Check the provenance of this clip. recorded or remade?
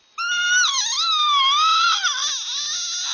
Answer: recorded